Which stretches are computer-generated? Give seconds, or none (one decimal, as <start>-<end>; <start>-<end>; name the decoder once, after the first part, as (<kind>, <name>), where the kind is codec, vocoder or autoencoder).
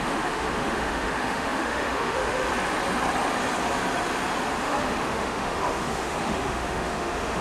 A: 0.0-2.5 (autoencoder, DAC-VAE); 4.6-7.4